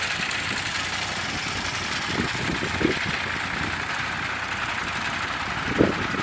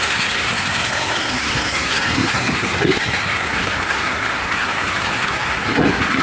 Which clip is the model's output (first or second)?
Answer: second